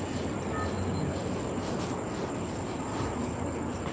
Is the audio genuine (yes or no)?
yes